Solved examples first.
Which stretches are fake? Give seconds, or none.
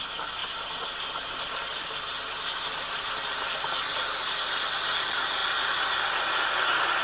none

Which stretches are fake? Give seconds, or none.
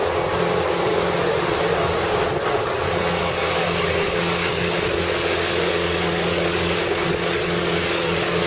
3.2-8.5 (codec, DAC)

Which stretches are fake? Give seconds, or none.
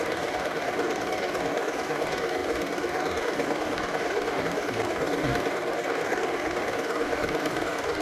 0.0-8.0 (codec, DAC)